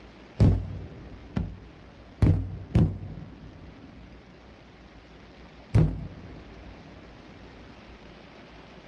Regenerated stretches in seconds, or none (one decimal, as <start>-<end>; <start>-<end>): none